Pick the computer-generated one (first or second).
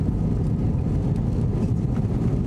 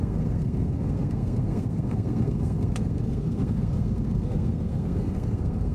second